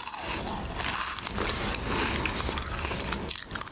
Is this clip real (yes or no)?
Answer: yes